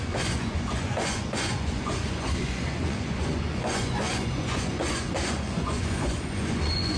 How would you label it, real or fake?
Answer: fake